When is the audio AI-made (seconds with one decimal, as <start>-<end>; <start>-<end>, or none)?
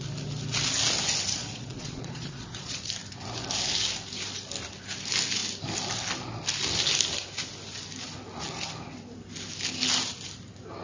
1.4-2.8